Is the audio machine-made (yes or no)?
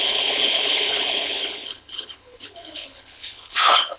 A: yes